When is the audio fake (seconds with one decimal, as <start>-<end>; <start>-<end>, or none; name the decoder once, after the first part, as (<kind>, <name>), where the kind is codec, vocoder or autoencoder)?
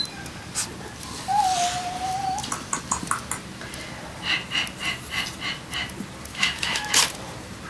6.3-6.9 (autoencoder, DAC-VAE)